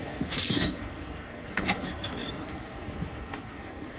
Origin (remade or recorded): remade